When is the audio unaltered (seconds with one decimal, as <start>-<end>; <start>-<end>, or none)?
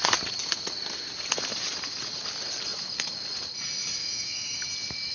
0.0-4.0; 4.6-5.1